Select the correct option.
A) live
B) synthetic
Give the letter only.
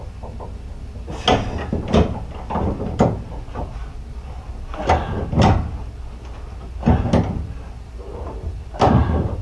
A